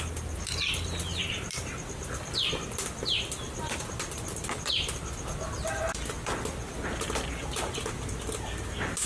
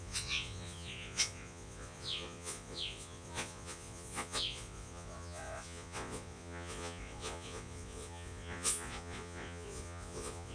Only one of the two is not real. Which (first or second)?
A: second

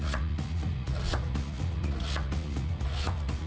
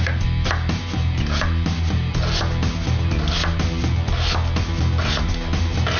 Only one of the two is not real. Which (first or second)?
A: first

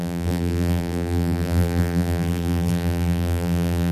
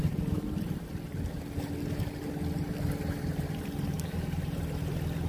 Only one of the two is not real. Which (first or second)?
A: first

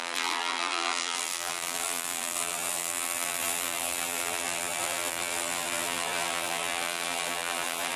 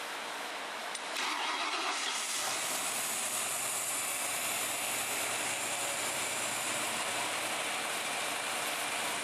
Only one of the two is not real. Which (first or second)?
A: first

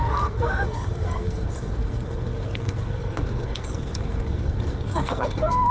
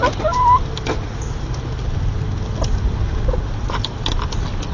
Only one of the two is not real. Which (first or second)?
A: first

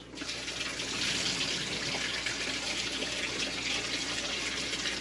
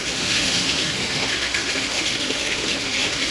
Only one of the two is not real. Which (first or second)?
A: second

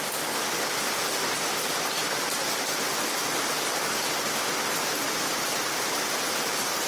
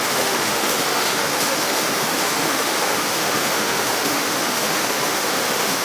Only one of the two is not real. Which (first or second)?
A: second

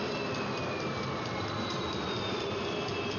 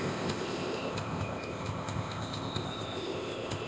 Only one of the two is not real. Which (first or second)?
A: second